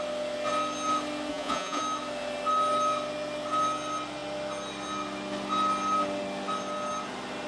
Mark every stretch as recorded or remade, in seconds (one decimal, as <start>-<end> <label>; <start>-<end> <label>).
0.0-1.3 recorded; 1.3-1.8 remade; 1.8-7.5 recorded